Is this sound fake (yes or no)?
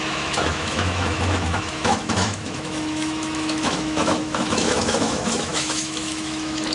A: yes